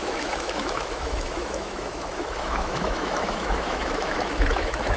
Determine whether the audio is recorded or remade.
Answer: remade